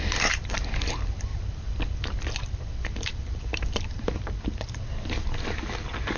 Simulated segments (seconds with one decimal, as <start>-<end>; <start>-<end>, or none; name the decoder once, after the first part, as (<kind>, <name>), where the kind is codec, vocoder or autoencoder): none